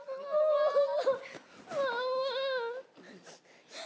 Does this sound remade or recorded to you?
recorded